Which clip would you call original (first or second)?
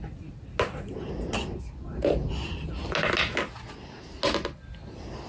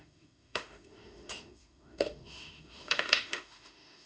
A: first